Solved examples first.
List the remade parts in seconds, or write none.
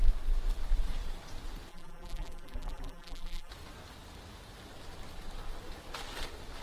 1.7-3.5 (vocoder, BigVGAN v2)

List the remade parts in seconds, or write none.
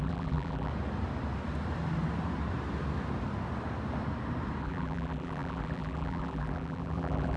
0.0-0.7 (vocoder, BigVGAN v2); 4.6-7.4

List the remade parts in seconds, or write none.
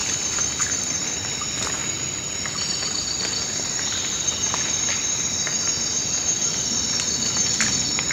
0.0-0.6 (vocoder, BigVGAN v2); 6.5-7.4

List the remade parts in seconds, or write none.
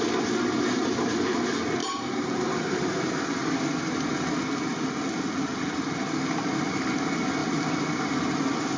1.8-3.9 (vocoder, BigVGAN v2); 7.4-8.4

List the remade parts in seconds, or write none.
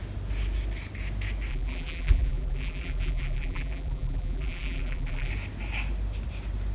1.5-5.3 (vocoder, BigVGAN v2)